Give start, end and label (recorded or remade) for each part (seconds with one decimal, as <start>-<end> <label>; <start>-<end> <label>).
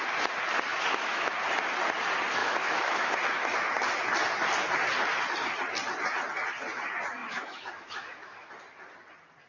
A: 0.0-0.7 recorded; 0.7-1.3 remade; 1.3-2.4 recorded; 2.4-3.1 remade; 3.1-7.2 recorded; 7.2-8.5 remade; 8.5-9.5 recorded